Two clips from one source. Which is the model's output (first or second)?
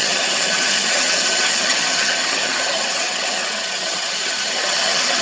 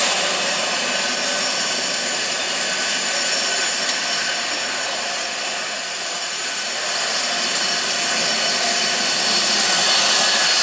first